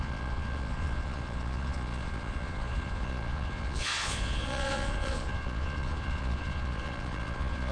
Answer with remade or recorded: remade